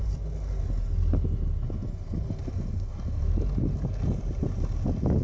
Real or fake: real